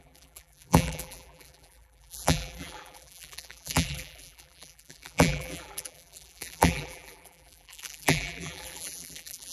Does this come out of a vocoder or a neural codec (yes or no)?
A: yes